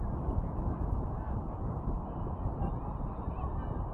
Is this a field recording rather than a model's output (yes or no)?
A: yes